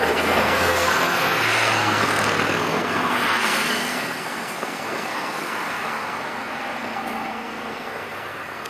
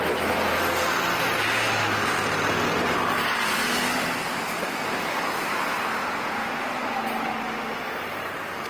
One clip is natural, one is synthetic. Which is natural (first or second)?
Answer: second